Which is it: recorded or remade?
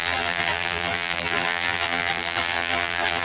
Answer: remade